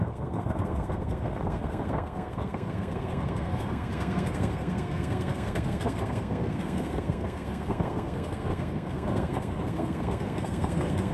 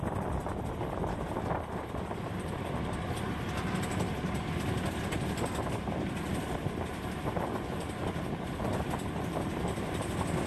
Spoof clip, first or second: first